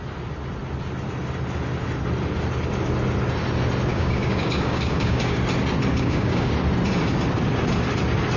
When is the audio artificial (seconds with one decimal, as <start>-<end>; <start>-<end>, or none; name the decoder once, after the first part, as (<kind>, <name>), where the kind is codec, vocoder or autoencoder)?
3.9-5.4 (codec, DAC); 5.9-6.5